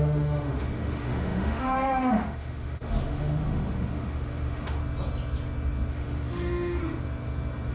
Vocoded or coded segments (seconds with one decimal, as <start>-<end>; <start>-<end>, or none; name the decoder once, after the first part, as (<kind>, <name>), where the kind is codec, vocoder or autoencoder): 0.0-4.8 (autoencoder, DAC-VAE); 5.9-6.8